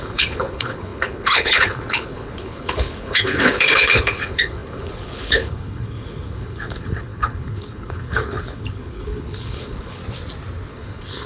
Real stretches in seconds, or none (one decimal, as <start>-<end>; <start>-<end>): 10.0-10.7